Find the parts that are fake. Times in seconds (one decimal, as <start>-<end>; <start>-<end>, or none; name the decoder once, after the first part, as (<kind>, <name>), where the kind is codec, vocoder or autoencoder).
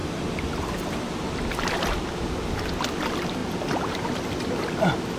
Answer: none